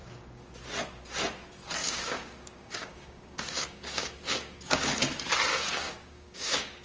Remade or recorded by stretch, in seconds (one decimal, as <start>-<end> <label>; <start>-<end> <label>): 0.0-0.5 remade; 0.5-1.8 recorded; 1.8-4.9 remade; 4.9-5.5 recorded; 5.5-6.8 remade